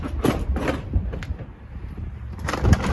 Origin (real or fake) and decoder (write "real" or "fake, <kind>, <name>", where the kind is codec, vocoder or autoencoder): fake, vocoder, BigVGAN v2